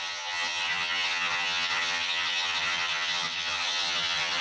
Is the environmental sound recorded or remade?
remade